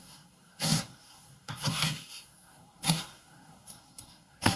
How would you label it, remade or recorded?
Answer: remade